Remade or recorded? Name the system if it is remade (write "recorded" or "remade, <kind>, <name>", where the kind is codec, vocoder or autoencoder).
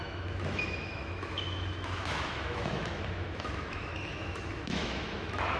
remade, autoencoder, DAC-VAE